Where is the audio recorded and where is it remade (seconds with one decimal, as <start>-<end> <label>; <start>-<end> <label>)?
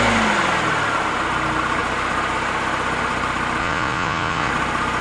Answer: 0.0-3.6 recorded; 3.6-4.5 remade; 4.5-5.0 recorded